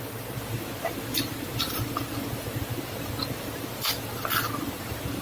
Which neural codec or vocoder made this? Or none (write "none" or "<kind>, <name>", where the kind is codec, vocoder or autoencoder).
none